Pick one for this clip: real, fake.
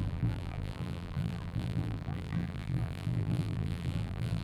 fake